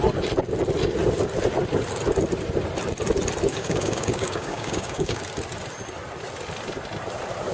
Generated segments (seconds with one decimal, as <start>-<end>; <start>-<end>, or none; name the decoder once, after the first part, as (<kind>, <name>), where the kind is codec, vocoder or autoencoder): 3.5-5.2 (codec, DAC)